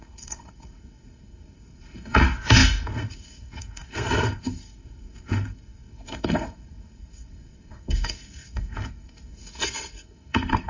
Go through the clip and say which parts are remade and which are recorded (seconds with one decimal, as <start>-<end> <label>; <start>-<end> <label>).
0.0-10.7 remade